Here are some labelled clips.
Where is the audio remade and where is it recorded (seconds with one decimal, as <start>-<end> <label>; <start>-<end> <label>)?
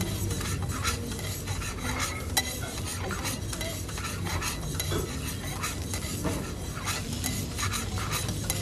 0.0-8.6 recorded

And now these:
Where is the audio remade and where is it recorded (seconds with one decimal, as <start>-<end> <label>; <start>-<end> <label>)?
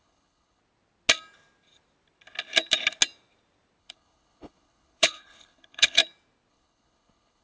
0.0-0.6 remade; 0.6-3.8 recorded; 3.8-6.0 remade; 6.0-6.5 recorded; 6.5-7.4 remade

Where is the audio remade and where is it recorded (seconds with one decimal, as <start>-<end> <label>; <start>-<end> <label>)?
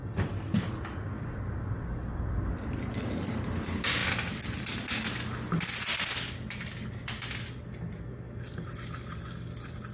0.0-9.9 recorded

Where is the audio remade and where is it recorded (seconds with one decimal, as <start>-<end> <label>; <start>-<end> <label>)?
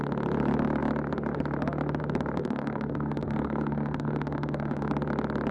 0.0-2.4 recorded; 2.4-4.9 remade; 4.9-5.5 recorded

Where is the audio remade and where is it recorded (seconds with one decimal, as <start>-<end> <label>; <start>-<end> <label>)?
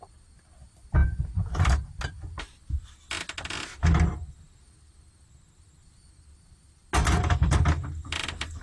0.0-8.6 recorded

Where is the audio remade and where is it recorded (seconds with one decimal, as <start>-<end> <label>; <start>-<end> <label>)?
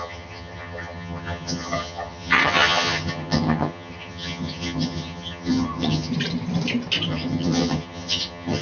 0.0-6.1 remade; 6.1-7.1 recorded; 7.1-8.6 remade